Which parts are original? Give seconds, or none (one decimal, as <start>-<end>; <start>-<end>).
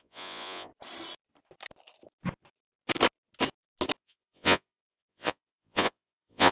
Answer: 0.7-4.0